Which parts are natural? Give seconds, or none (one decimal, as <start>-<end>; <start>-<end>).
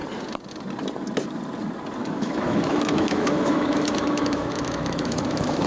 0.0-2.0